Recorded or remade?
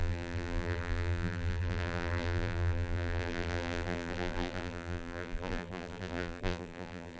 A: remade